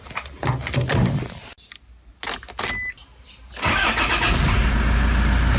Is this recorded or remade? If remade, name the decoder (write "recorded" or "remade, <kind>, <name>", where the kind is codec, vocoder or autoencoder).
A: recorded